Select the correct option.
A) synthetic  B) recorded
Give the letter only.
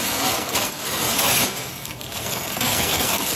A